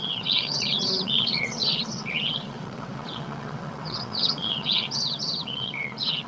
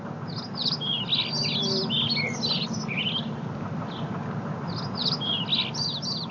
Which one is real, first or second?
second